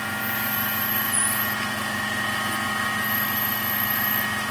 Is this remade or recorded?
recorded